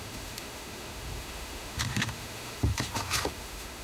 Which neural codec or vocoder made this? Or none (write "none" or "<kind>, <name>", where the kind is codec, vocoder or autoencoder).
autoencoder, DAC-VAE